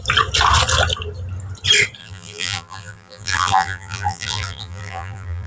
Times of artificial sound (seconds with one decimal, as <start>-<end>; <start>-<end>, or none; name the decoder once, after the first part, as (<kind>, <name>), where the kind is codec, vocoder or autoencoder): 2.0-5.5 (vocoder, BigVGAN v2)